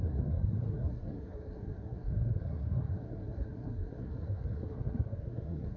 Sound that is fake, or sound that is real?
fake